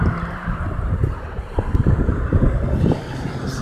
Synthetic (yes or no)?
yes